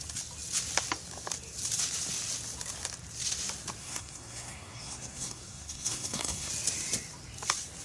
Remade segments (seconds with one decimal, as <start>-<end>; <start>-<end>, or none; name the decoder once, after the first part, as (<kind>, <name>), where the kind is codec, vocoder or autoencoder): 3.8-6.5 (codec, SNAC)